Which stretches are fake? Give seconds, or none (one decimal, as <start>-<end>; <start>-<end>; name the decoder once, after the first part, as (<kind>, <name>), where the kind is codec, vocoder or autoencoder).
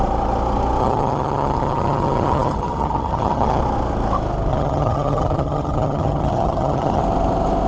0.8-3.6 (vocoder, HiFi-GAN); 4.5-7.0